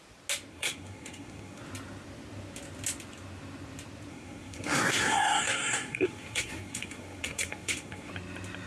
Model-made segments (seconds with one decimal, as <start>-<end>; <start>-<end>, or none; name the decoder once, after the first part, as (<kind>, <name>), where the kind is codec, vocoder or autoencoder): 0.5-1.6 (codec, SNAC); 4.1-8.1